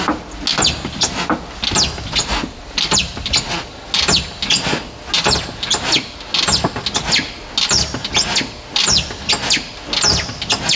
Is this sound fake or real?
real